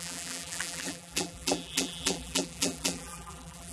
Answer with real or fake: fake